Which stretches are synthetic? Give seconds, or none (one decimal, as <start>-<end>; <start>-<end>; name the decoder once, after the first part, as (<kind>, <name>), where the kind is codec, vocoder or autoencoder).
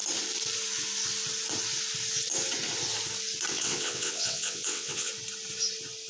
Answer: 3.5-5.1 (vocoder, WaveNeXt)